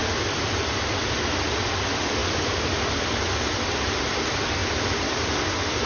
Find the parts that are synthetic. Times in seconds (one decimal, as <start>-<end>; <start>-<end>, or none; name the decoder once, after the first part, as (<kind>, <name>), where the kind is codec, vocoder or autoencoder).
0.0-1.0 (vocoder, BigVGAN v2); 2.2-2.9; 4.6-5.3